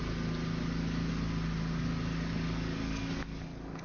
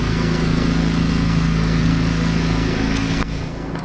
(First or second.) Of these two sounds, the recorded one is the first